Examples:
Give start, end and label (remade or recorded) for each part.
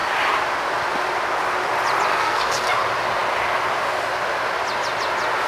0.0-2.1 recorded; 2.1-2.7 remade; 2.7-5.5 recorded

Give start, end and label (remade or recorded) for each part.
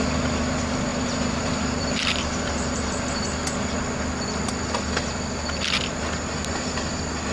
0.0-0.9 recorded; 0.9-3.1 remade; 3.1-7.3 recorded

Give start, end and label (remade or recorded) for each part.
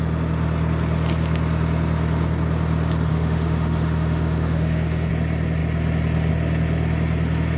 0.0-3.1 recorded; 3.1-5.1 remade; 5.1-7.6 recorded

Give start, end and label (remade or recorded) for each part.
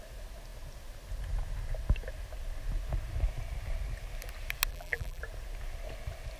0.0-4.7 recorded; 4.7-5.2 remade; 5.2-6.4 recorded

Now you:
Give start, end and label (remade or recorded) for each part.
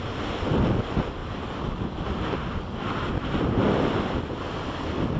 0.0-5.2 recorded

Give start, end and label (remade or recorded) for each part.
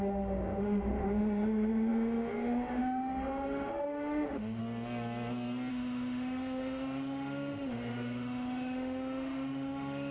0.0-4.6 remade; 4.6-5.7 recorded; 5.7-10.1 remade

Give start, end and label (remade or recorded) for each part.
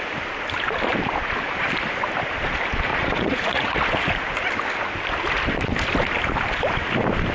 0.0-2.9 recorded; 2.9-3.9 remade; 3.9-7.3 recorded